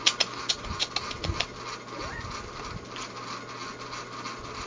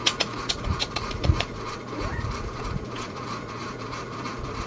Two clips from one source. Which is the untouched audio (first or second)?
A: first